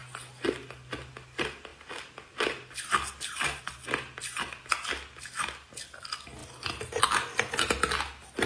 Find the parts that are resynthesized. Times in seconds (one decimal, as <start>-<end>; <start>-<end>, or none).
none

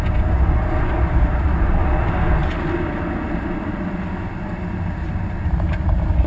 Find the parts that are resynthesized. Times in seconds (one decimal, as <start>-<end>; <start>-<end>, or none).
none